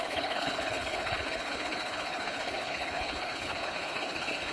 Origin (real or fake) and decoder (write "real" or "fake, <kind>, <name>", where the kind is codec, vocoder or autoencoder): fake, codec, HILCodec